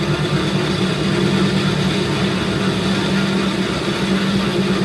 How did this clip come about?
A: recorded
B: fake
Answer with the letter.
A